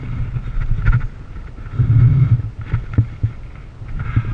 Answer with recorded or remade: recorded